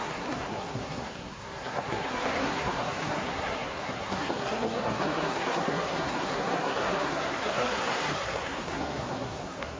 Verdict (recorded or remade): remade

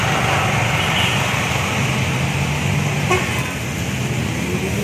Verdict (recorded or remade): recorded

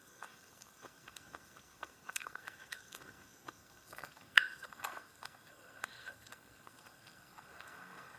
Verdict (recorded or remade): remade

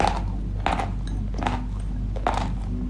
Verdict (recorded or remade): recorded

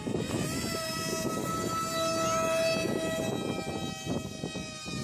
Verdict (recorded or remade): recorded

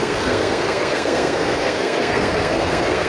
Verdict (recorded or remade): remade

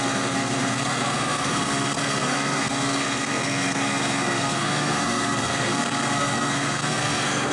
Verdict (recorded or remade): remade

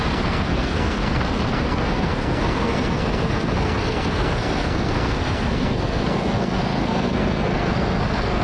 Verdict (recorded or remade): remade